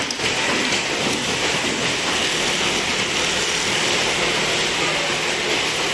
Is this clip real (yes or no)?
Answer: yes